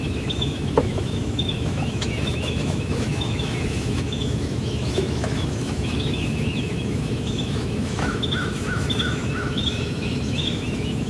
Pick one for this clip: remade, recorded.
remade